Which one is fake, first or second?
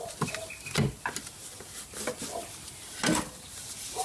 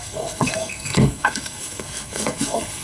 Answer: second